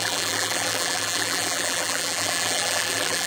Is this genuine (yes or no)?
no